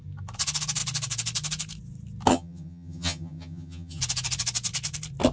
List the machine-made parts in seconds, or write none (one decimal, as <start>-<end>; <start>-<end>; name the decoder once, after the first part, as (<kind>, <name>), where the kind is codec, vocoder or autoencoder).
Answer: 2.3-4.0 (vocoder, HiFi-GAN)